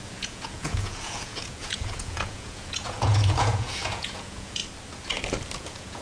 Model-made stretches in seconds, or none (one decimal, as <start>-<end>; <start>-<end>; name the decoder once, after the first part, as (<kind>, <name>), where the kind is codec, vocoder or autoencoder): 0.0-4.6 (vocoder, Vocos); 5.6-6.0